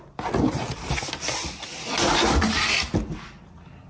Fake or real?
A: real